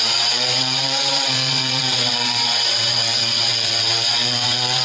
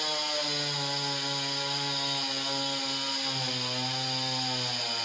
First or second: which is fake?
first